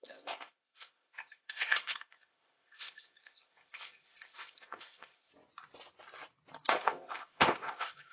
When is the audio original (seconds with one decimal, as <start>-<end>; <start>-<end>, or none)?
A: 5.3-6.7